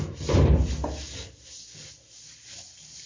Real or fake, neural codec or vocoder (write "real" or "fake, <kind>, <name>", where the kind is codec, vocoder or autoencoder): real